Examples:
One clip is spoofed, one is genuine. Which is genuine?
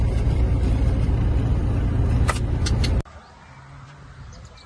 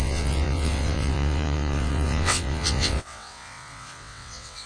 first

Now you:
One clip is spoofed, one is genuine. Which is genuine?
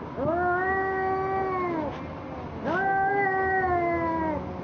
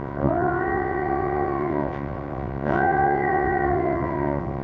first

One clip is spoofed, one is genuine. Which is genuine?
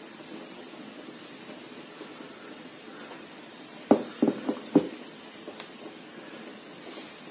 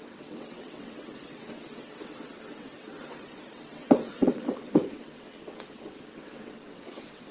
first